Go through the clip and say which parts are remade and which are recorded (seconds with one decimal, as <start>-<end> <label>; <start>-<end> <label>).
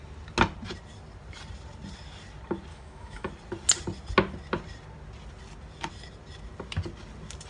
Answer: 0.0-2.7 recorded; 2.7-3.3 remade; 3.3-7.5 recorded